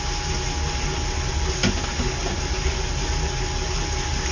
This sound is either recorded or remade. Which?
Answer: recorded